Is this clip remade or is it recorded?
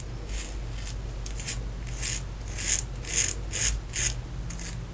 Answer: recorded